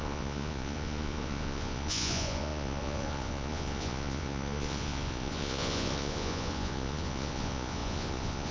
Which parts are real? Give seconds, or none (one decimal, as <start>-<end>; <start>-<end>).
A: none